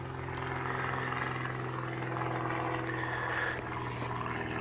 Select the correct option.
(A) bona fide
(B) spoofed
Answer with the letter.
A